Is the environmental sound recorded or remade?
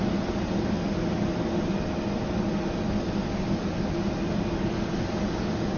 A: recorded